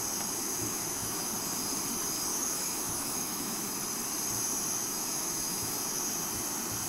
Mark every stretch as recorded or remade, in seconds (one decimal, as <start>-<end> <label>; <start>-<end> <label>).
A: 0.0-0.4 recorded; 0.4-1.3 remade; 1.3-2.3 recorded; 2.3-3.8 remade; 3.8-4.8 recorded; 4.8-6.0 remade; 6.0-6.9 recorded